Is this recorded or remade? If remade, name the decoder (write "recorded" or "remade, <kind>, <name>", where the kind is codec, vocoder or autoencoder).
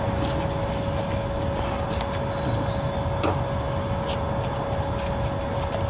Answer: recorded